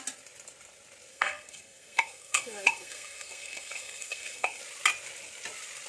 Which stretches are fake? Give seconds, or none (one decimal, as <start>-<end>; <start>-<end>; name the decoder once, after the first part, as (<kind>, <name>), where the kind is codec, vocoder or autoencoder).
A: 1.1-4.6 (codec, SNAC)